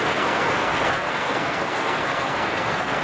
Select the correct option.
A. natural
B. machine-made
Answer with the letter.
B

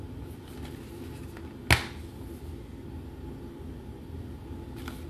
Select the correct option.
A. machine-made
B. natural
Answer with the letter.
B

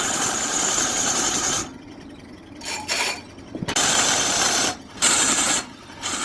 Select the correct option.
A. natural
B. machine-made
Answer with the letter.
A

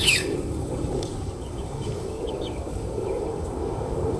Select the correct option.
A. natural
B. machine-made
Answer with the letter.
B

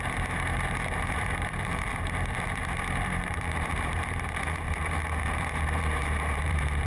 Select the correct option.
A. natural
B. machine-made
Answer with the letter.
B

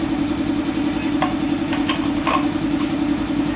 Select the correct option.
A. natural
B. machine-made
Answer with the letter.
A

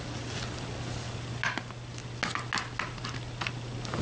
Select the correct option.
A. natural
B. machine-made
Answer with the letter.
A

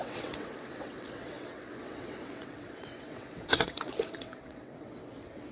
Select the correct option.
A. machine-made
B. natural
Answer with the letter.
A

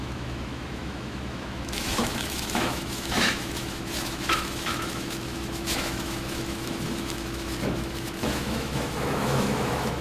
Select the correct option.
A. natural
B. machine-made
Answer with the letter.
B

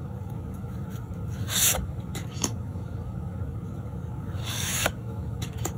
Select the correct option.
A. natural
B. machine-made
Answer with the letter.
B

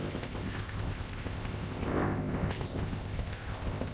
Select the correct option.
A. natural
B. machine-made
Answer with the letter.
B